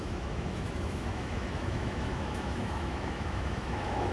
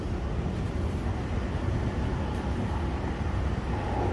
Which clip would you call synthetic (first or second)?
first